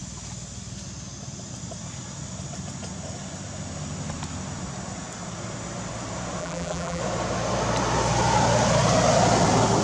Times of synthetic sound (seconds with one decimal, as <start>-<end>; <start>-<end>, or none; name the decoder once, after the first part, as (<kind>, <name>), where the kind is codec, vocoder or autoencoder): 6.4-7.0 (vocoder, BigVGAN v2)